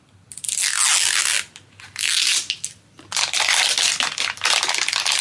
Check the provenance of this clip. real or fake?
real